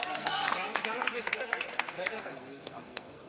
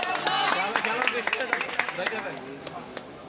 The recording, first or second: second